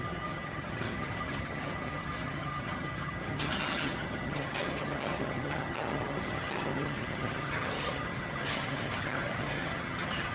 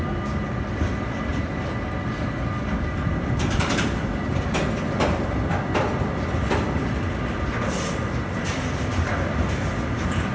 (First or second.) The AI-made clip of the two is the first